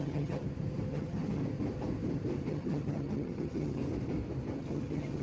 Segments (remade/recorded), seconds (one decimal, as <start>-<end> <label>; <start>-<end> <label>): 0.0-0.4 remade; 0.4-0.9 recorded; 0.9-1.4 remade; 1.4-2.5 recorded; 2.5-3.8 remade; 3.8-4.6 recorded; 4.6-5.2 remade